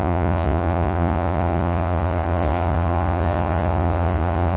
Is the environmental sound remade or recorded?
remade